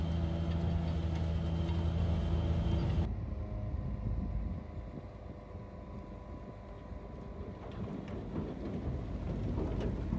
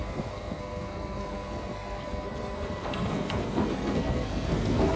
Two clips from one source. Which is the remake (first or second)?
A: second